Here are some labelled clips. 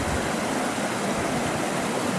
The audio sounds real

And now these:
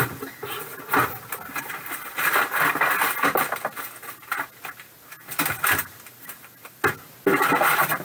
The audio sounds real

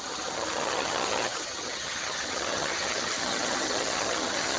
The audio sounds fake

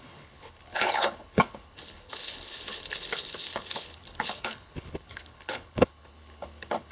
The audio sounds fake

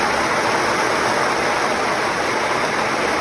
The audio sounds real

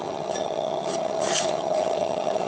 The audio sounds fake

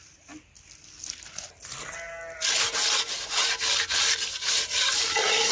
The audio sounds real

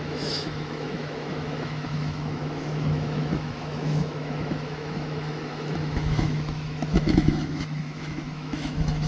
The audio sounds fake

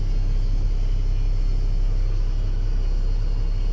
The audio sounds real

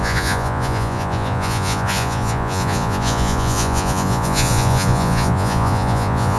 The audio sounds fake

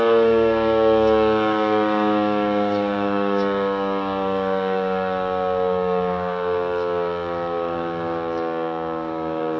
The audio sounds fake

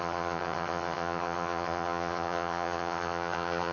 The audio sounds fake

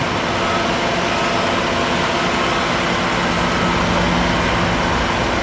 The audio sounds real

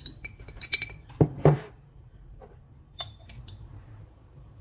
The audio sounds fake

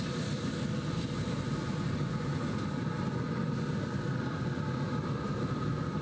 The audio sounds real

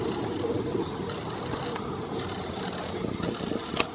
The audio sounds real